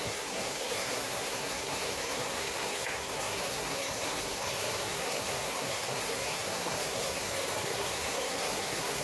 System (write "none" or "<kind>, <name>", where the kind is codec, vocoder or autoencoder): codec, SNAC